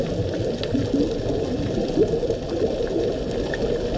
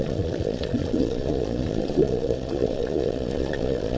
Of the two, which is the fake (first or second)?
second